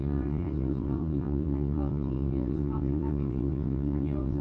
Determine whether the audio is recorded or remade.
remade